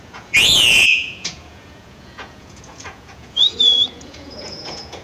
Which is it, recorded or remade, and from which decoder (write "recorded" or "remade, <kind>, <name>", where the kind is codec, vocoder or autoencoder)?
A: remade, vocoder, Vocos